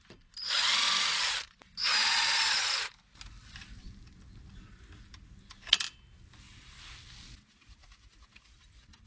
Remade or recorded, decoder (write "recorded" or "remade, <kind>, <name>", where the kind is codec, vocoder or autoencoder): recorded